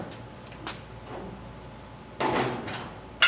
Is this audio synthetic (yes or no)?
no